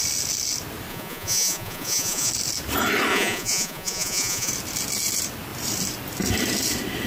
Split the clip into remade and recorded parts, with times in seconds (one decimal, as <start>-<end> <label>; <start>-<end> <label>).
0.0-0.9 recorded; 0.9-2.3 remade; 2.3-3.1 recorded; 3.1-4.5 remade; 4.5-7.1 recorded

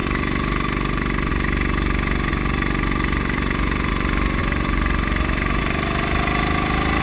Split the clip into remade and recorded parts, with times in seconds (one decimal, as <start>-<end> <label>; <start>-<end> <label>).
0.0-1.3 remade; 1.3-2.3 recorded; 2.3-3.9 remade; 3.9-4.4 recorded; 4.4-5.6 remade; 5.6-7.0 recorded

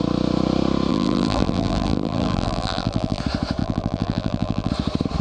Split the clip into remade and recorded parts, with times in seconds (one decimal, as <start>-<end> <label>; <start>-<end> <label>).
0.0-0.9 recorded; 0.9-3.2 remade; 3.2-3.6 recorded; 3.6-4.7 remade; 4.7-5.2 recorded